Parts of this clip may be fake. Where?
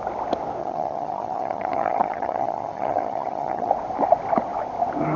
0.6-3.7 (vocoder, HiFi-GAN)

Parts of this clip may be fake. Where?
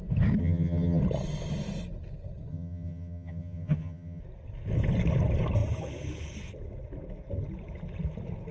0.4-1.0 (vocoder, HiFi-GAN); 2.5-4.2